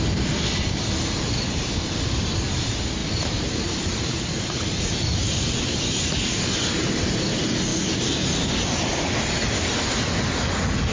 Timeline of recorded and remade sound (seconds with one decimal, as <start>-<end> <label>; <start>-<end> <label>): 0.0-3.0 recorded; 3.0-7.3 remade; 7.3-10.9 recorded